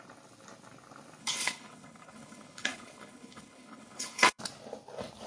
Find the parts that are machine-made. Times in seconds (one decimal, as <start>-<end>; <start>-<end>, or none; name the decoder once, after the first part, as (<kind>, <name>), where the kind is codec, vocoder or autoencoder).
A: 1.2-4.4 (codec, HILCodec)